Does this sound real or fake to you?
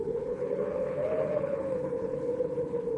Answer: fake